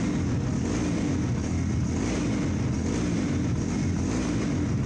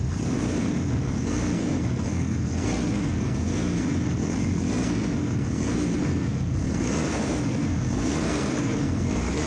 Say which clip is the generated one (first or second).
second